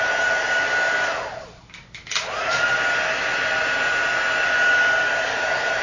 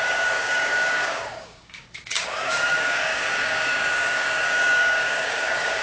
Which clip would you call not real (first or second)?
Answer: second